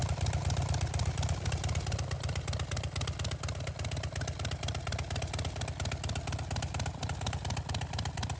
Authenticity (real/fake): real